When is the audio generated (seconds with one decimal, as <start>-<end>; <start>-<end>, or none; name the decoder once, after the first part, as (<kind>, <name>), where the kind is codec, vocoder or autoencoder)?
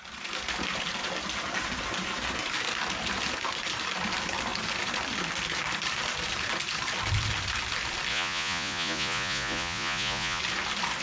8.1-10.4 (vocoder, Vocos)